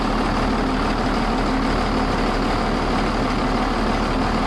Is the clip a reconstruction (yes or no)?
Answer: no